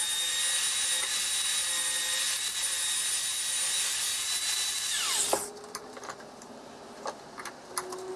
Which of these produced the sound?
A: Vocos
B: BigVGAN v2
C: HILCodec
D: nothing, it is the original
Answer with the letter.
D